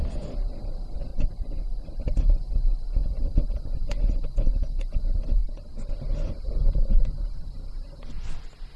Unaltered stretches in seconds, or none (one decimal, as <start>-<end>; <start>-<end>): 0.0-1.1; 2.0-3.0; 5.0-8.8